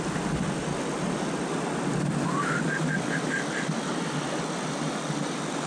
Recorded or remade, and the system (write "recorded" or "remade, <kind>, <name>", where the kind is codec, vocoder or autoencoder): recorded